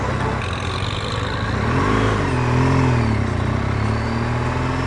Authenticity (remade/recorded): recorded